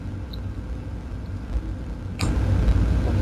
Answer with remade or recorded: recorded